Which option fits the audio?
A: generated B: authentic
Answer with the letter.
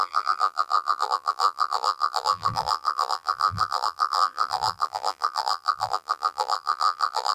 A